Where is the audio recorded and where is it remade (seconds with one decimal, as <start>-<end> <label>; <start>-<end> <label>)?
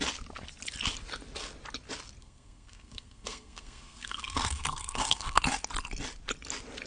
0.0-2.2 recorded; 2.2-5.4 remade; 5.4-6.9 recorded